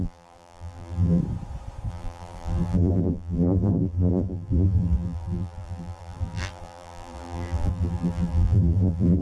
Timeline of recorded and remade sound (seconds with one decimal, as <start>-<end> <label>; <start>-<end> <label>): 0.0-1.2 remade; 1.2-1.9 recorded; 1.9-9.2 remade